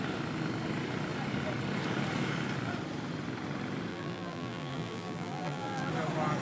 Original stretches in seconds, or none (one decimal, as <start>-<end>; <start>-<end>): 0.0-3.9; 5.9-6.4